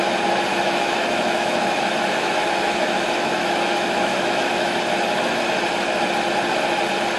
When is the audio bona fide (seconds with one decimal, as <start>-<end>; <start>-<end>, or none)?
0.0-0.5; 4.8-7.2